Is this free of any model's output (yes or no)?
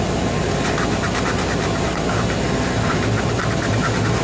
yes